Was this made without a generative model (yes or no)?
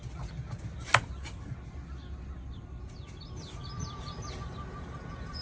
yes